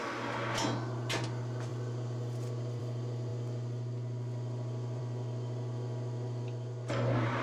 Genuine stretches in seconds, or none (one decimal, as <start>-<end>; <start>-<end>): 0.0-1.7; 2.8-7.4